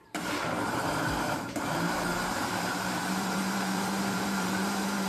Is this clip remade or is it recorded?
remade